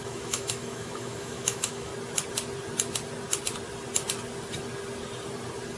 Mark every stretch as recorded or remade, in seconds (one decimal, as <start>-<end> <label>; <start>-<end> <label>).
0.0-1.9 remade; 1.9-5.8 recorded